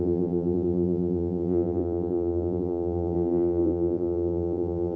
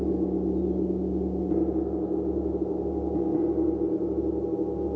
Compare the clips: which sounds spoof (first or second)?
first